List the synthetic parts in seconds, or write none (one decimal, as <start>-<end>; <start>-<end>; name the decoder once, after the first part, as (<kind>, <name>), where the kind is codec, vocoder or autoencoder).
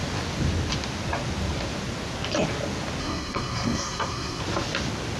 3.0-4.4 (codec, SNAC)